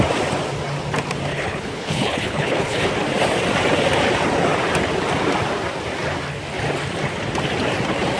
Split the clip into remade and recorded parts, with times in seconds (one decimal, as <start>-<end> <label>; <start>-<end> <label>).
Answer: 0.0-1.3 recorded; 1.3-2.9 remade; 2.9-8.2 recorded